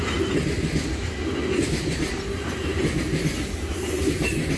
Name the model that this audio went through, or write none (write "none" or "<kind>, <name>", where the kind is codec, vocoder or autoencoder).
none